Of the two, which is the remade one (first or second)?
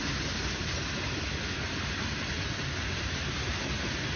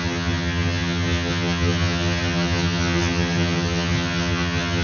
second